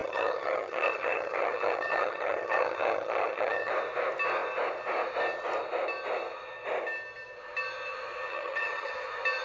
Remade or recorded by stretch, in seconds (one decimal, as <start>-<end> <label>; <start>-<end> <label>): 0.0-3.7 remade; 3.7-8.3 recorded; 8.3-8.9 remade; 8.9-9.4 recorded